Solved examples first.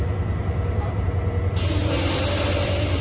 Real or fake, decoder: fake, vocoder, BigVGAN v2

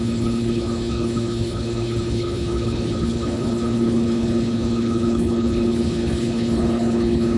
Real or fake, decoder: fake, codec, HILCodec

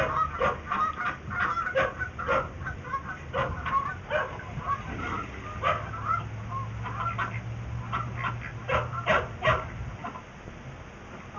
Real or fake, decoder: real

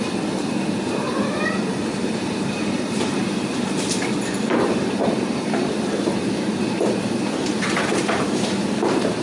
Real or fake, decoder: fake, vocoder, BigVGAN v2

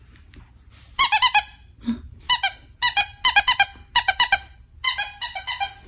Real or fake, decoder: real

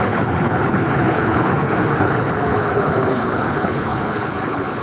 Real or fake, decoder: fake, codec, HILCodec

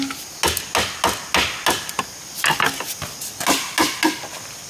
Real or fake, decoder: real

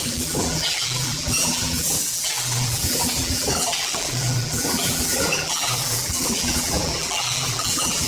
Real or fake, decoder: fake, vocoder, BigVGAN v2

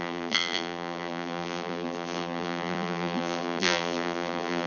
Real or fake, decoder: fake, vocoder, BigVGAN v2